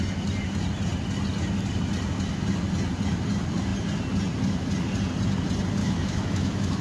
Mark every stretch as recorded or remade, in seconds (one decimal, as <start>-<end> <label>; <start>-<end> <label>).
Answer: 0.0-5.8 recorded; 5.8-6.8 remade

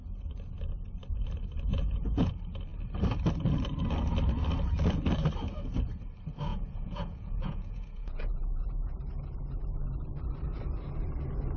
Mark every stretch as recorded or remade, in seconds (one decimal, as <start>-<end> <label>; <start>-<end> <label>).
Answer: 0.0-1.7 recorded; 1.7-2.3 remade; 2.3-6.5 recorded; 6.5-9.0 remade; 9.0-11.6 recorded

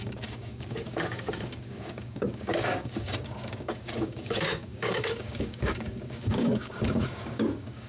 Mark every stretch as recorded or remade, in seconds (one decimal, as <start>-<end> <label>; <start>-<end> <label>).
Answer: 0.0-7.9 remade

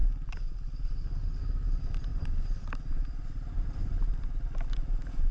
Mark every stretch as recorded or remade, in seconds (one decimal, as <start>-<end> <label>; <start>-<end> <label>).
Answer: 0.0-2.1 recorded; 2.1-5.3 remade

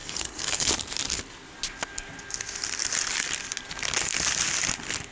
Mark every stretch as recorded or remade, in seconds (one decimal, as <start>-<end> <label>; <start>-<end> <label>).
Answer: 0.0-0.7 remade; 0.7-5.1 recorded

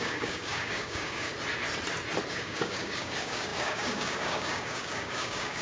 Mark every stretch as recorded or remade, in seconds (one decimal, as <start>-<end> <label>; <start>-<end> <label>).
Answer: 0.0-1.3 remade; 1.3-2.3 recorded; 2.3-5.6 remade

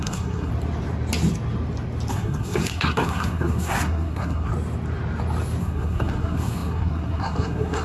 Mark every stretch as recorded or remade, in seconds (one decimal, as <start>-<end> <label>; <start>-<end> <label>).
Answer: 0.0-0.5 remade; 0.5-2.1 recorded; 2.1-4.5 remade; 4.5-5.6 recorded; 5.6-7.8 remade